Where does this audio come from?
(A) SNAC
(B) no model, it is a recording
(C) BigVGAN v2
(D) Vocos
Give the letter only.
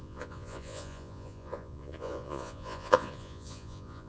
D